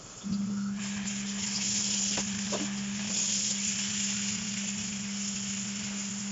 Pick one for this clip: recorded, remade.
recorded